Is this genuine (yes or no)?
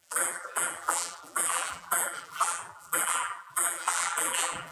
no